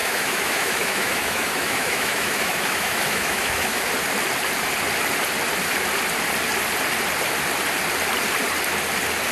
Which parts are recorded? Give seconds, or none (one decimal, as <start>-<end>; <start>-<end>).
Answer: 3.9-9.3